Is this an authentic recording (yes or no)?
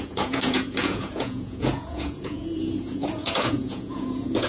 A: no